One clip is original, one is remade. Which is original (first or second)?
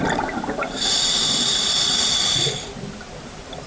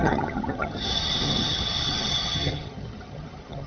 first